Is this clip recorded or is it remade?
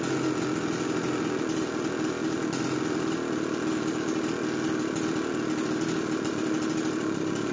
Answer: recorded